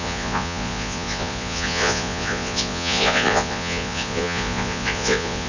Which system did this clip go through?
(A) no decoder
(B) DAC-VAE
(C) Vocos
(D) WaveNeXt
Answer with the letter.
C